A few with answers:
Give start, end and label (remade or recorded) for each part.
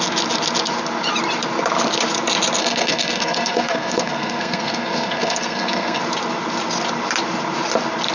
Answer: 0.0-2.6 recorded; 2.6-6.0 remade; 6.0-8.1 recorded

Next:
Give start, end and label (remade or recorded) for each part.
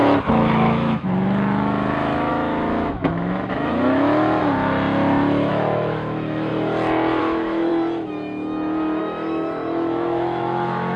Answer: 0.0-4.4 remade; 4.4-5.5 recorded; 5.5-6.5 remade; 6.5-7.2 recorded; 7.2-7.7 remade; 7.7-9.0 recorded; 9.0-11.0 remade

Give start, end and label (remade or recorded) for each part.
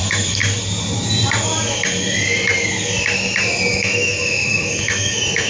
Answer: 0.0-0.4 remade; 0.4-3.7 recorded; 3.7-5.5 remade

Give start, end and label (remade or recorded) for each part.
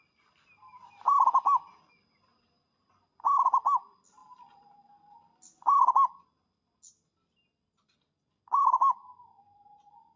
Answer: 0.0-10.2 recorded